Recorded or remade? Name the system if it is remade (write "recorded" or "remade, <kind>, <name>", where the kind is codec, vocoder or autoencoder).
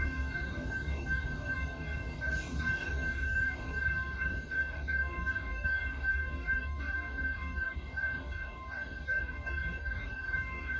remade, codec, DAC